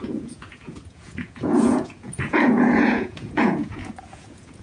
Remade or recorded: remade